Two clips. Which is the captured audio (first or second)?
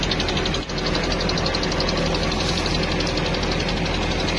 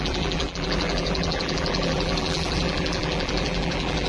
first